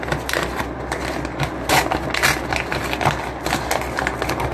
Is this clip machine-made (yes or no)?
no